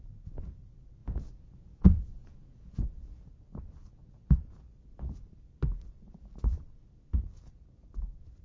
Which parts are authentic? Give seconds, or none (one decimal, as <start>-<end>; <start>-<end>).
0.0-1.0; 3.3-3.8; 4.6-8.4